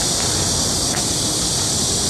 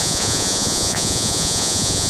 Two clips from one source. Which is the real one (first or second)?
first